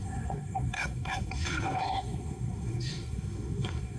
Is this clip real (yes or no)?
no